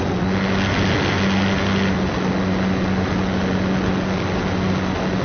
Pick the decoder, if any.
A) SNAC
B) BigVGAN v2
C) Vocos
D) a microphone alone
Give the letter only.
D